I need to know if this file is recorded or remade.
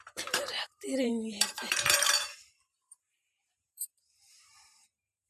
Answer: remade